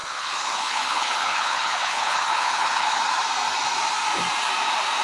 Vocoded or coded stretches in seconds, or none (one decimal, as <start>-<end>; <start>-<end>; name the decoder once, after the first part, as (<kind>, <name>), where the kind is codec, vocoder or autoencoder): 0.0-3.0 (codec, HILCodec)